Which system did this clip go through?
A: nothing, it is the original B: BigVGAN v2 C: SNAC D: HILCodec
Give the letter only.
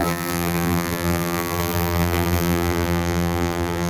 B